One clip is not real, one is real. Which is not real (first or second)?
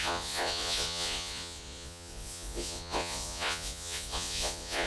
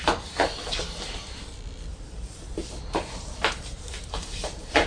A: first